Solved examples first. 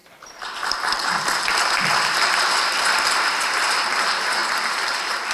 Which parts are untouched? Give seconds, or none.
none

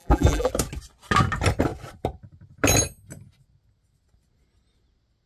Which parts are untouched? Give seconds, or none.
0.5-5.3

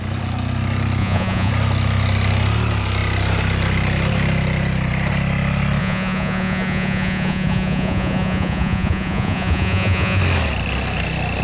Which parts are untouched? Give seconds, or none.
0.0-1.0; 1.5-5.8; 10.2-11.4

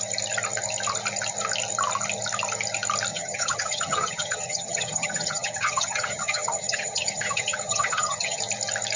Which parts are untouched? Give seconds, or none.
0.0-3.1; 8.4-9.0

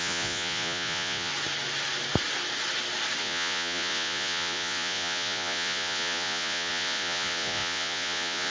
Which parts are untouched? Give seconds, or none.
1.3-3.2

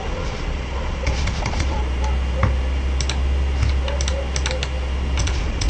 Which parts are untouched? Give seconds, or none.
1.8-5.2